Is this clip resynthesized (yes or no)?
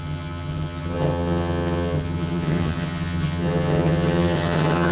yes